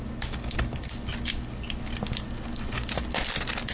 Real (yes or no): yes